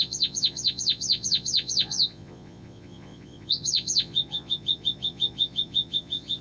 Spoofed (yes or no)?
yes